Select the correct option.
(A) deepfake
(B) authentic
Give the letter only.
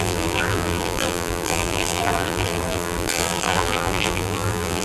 A